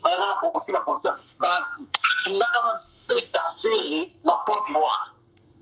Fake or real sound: fake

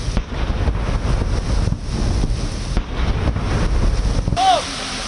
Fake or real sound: real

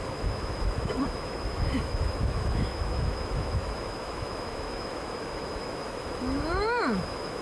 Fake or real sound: fake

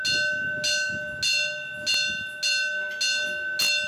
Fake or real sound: real